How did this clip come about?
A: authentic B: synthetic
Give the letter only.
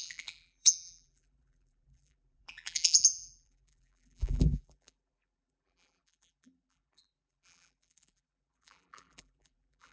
B